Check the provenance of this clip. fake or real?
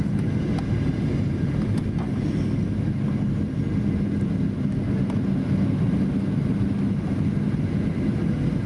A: real